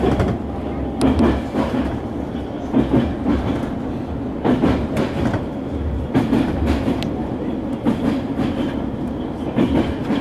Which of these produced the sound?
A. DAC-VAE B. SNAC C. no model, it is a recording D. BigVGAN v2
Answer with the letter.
C